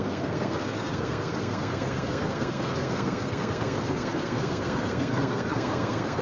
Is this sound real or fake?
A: fake